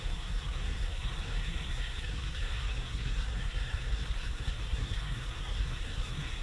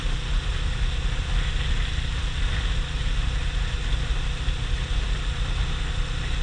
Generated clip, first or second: first